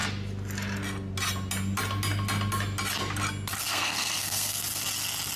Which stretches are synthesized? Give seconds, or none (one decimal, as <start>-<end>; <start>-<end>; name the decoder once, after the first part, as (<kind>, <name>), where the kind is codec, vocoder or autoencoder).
3.7-4.6 (codec, SNAC)